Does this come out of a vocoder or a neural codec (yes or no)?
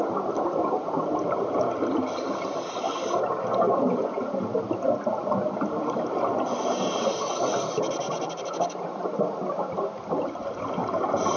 no